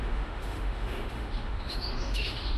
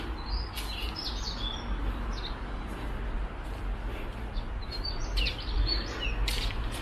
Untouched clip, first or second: second